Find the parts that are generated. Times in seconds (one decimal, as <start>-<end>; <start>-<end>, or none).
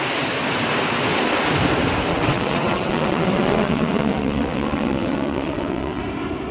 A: 2.1-6.0